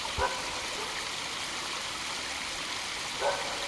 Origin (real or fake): real